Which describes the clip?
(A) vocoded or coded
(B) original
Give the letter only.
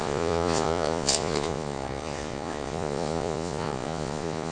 A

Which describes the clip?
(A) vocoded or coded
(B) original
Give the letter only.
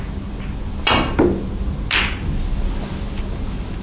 B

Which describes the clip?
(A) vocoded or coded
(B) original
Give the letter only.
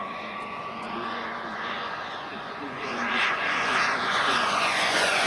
A